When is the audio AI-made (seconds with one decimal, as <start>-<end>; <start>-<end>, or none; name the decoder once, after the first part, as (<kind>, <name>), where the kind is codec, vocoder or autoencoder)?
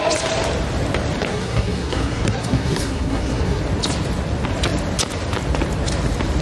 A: 1.3-3.6 (codec, SNAC)